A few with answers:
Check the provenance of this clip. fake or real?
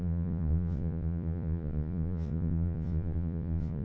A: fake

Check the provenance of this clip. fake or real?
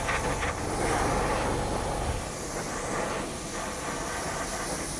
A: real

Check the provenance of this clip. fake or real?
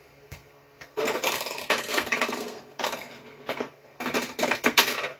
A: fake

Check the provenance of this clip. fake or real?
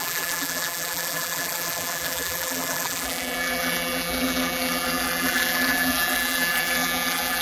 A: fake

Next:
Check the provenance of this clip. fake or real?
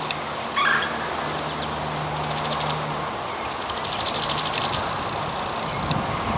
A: real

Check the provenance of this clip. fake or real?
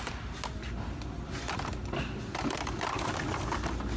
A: real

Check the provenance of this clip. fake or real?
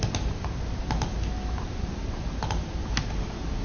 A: real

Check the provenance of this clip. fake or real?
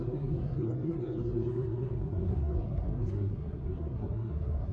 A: fake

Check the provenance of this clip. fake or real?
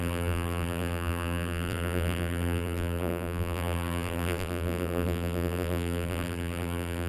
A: fake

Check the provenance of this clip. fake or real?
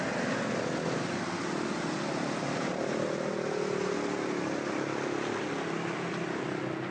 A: real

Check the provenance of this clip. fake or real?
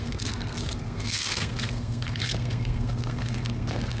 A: fake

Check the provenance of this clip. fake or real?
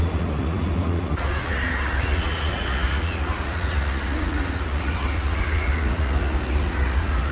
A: fake